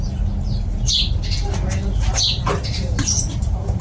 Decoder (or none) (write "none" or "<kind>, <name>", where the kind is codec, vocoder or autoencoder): none